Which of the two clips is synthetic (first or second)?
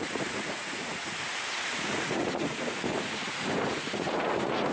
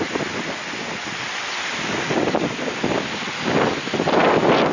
first